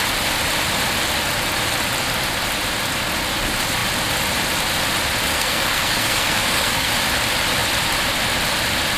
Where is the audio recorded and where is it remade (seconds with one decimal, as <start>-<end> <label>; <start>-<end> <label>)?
0.0-5.3 recorded; 5.3-6.9 remade; 6.9-9.0 recorded